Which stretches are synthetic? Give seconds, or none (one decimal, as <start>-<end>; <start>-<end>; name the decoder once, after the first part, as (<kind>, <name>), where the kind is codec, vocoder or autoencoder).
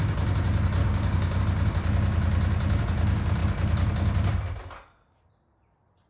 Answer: 0.8-1.4 (codec, DAC)